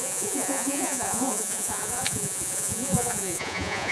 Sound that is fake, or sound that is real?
fake